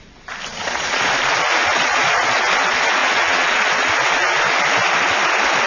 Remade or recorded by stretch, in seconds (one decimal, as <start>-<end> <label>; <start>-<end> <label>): 0.0-0.6 recorded; 0.6-1.1 remade; 1.1-1.6 recorded; 1.6-2.4 remade; 2.4-3.0 recorded; 3.0-3.9 remade; 3.9-5.7 recorded